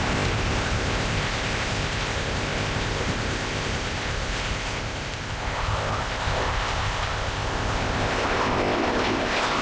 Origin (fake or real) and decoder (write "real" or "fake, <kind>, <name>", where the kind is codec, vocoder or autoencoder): fake, codec, ZipCodec